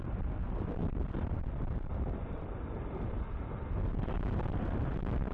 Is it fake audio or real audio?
fake